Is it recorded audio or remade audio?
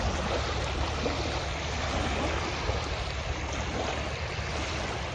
recorded